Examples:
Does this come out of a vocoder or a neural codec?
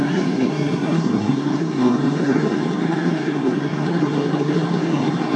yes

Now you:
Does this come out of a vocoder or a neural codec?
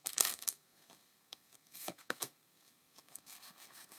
yes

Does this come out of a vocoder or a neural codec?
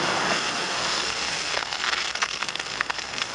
yes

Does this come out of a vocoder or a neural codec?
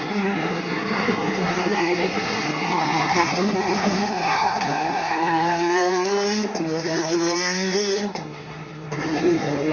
yes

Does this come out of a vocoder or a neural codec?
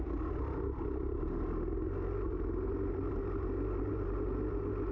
no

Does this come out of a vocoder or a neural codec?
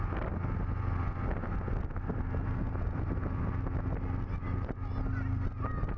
no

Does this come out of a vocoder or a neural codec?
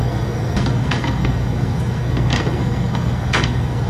yes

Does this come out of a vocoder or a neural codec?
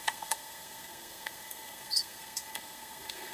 yes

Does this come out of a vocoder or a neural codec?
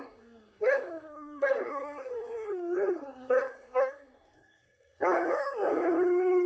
yes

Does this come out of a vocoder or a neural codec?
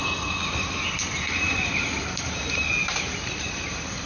no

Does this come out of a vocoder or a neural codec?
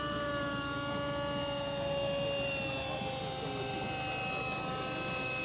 no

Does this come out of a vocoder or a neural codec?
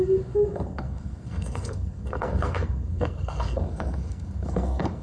yes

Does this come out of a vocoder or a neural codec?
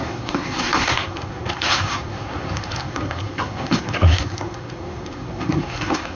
yes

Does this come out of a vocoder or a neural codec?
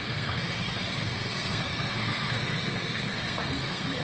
yes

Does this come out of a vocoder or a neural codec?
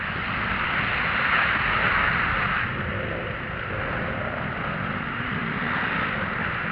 no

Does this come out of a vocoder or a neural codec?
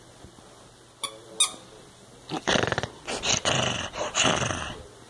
no